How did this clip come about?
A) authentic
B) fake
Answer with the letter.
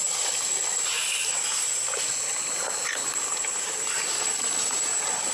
A